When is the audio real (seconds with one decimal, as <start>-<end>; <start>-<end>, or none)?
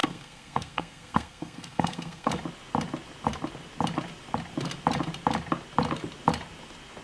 2.3-7.0